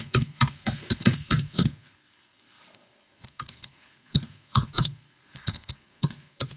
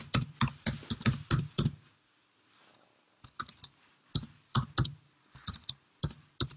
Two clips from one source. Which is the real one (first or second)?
second